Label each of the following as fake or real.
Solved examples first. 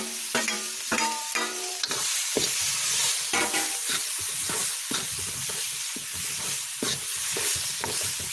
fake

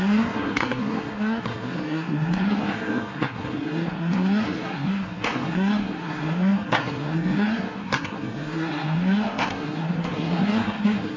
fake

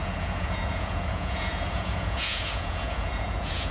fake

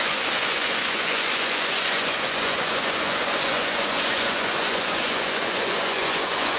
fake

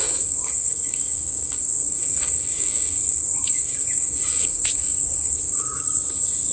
fake